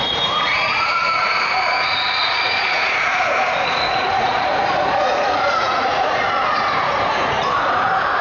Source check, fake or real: fake